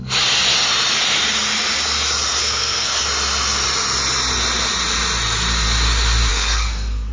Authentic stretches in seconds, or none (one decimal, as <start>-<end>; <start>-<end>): 0.0-2.4; 3.0-6.3